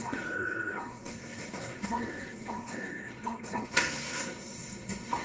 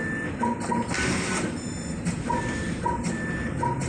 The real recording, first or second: second